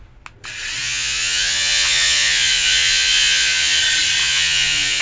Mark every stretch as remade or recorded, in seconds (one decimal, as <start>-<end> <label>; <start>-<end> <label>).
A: 0.0-0.8 recorded; 0.8-3.8 remade; 3.8-4.2 recorded; 4.2-5.0 remade